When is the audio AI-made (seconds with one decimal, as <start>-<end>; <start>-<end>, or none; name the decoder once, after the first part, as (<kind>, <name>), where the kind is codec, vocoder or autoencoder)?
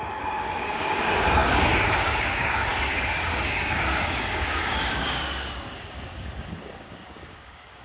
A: 0.0-7.8 (codec, DAC)